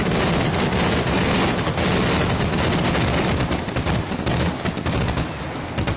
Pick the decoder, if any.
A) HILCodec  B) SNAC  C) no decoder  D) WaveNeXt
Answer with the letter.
C